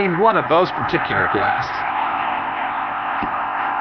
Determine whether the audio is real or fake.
fake